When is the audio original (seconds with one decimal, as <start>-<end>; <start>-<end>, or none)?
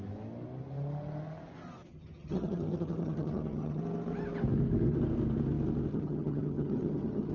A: 0.0-1.9; 3.8-5.9